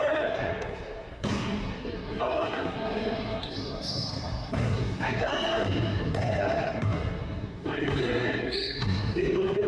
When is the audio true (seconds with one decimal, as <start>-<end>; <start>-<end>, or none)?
none